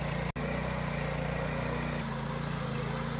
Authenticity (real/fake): real